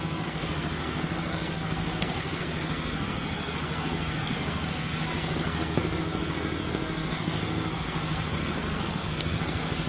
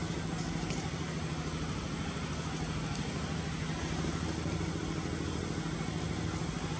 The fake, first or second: first